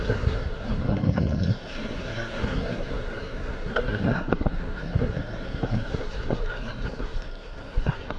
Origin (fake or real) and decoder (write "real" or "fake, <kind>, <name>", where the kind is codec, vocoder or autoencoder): fake, codec, SNAC